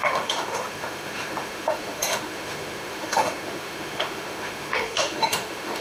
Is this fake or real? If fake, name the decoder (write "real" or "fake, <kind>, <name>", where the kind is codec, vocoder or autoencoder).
fake, autoencoder, DAC-VAE